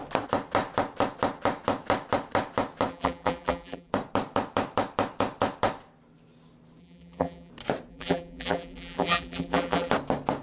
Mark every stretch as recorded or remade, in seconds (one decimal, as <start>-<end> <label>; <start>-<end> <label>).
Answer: 0.0-2.9 recorded; 2.9-3.9 remade; 3.9-6.8 recorded; 6.8-7.5 remade; 7.5-7.9 recorded; 7.9-9.9 remade; 9.9-10.4 recorded